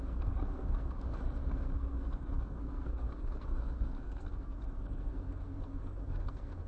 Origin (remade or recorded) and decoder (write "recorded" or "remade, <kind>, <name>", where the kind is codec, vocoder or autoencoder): remade, codec, SNAC